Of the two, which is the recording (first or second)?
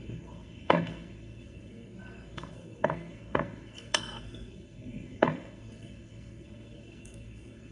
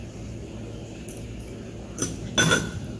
second